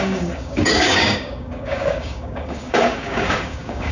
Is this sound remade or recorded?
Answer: remade